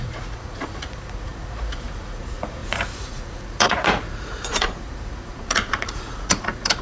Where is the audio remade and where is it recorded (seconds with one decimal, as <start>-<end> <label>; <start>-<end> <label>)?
0.0-6.8 remade

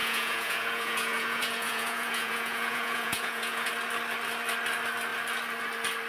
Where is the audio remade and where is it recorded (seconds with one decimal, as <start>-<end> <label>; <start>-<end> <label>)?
0.0-3.7 remade; 3.7-6.1 recorded

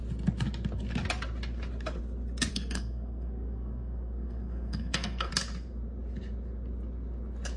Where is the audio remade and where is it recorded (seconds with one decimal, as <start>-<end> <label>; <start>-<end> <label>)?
0.0-2.5 recorded; 2.5-5.3 remade; 5.3-7.6 recorded

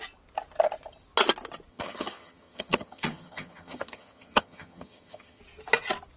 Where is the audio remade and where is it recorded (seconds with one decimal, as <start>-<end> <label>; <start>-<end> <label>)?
0.0-1.7 recorded; 1.7-5.4 remade; 5.4-6.2 recorded

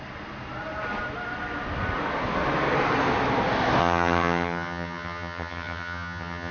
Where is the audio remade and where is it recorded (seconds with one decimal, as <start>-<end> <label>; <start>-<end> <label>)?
0.0-3.8 recorded; 3.8-6.5 remade

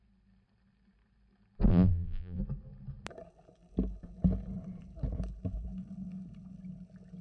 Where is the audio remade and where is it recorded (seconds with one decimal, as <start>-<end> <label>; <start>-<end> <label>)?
0.0-1.7 recorded; 1.7-2.4 remade; 2.4-7.2 recorded

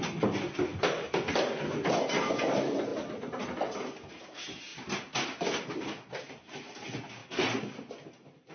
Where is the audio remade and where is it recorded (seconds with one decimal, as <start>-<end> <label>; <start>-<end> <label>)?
0.0-8.5 recorded

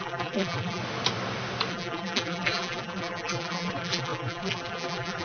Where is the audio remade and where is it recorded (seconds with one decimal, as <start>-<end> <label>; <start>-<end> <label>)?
0.0-0.8 remade; 0.8-1.7 recorded; 1.7-5.2 remade